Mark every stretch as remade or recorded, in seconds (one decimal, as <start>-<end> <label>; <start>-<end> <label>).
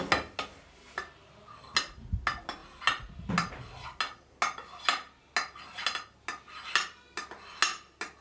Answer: 0.0-8.2 recorded